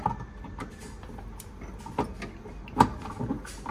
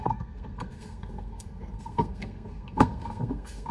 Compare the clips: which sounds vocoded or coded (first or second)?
second